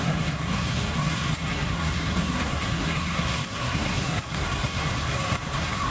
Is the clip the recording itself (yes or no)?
no